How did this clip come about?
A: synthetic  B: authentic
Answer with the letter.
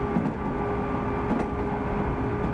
B